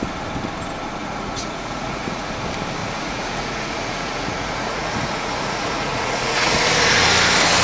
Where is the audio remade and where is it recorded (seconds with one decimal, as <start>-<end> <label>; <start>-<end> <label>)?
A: 0.0-1.0 recorded; 1.0-2.3 remade; 2.3-2.8 recorded; 2.8-6.5 remade; 6.5-7.6 recorded